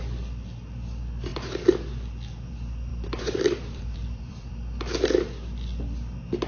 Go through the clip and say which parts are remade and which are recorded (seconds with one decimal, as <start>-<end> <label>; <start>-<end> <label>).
0.0-2.9 recorded; 2.9-4.5 remade; 4.5-6.5 recorded